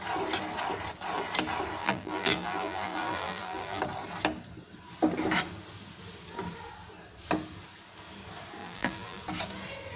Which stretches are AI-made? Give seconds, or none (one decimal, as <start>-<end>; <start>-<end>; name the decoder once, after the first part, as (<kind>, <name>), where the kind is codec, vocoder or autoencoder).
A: 1.8-3.8 (vocoder, BigVGAN v2); 8.6-9.2